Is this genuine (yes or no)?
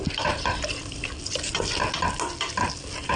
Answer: yes